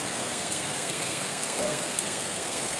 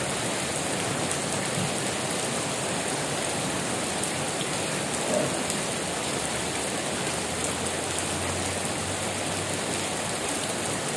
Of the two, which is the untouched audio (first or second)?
second